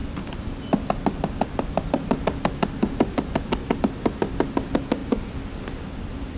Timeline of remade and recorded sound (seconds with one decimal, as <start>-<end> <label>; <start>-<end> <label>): 0.0-6.4 recorded